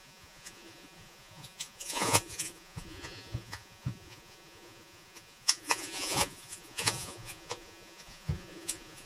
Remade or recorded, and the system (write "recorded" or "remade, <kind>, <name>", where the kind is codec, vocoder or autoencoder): remade, vocoder, Vocos